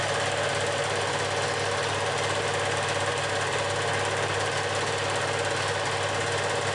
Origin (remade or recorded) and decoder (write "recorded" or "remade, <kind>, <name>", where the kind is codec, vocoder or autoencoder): recorded